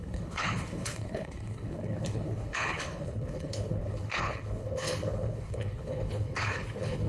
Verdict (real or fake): fake